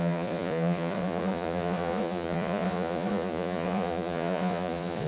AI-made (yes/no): yes